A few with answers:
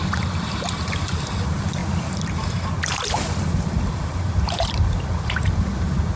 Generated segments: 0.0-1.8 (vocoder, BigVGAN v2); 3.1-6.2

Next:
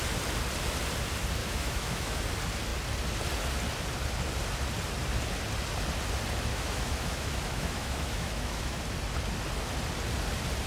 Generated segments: 1.4-2.2 (autoencoder, DAC-VAE); 6.5-8.8

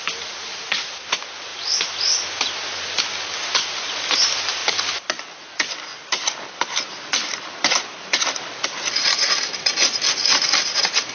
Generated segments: 1.5-2.8 (vocoder, BigVGAN v2); 5.9-8.9

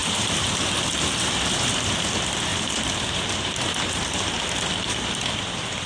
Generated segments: 0.0-0.6 (vocoder, BigVGAN v2); 2.5-5.9

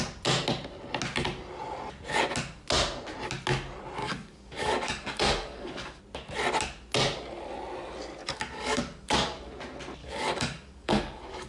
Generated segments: 4.0-6.0 (codec, DAC); 8.2-9.5; 10.0-11.5

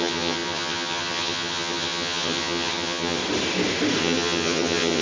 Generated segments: 0.0-3.2 (vocoder, HiFi-GAN); 4.0-5.0